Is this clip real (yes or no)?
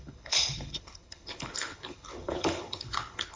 no